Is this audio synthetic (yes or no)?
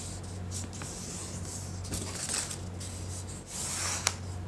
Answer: no